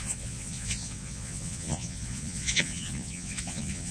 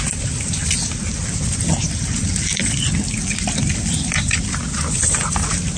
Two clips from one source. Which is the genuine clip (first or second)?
second